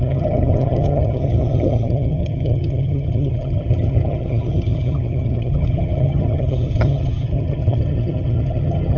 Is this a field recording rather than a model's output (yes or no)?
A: no